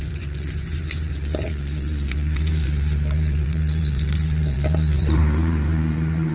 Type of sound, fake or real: fake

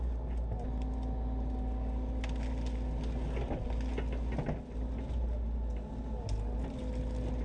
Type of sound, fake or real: real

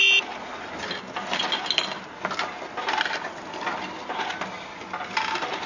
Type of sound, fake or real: real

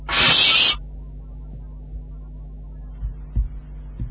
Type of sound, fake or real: real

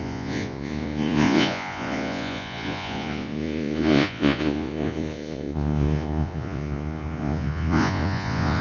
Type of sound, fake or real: fake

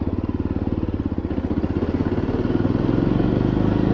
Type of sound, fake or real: real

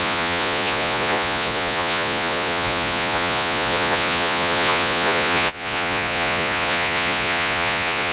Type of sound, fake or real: fake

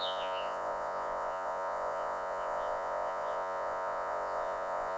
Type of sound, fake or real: fake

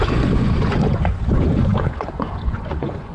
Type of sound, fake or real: fake